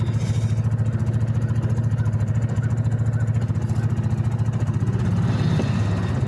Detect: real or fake real